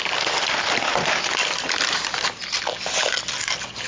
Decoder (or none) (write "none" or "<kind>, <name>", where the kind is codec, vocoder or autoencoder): none